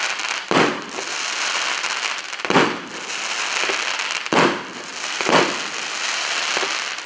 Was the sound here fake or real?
real